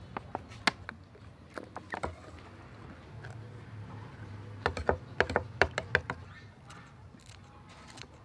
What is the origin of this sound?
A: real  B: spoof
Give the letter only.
A